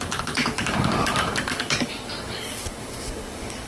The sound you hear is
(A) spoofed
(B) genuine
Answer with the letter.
A